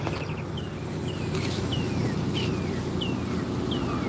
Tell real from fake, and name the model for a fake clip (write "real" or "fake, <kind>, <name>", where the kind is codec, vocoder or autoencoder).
real